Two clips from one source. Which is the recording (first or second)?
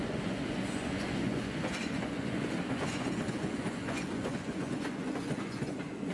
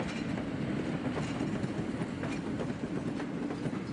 second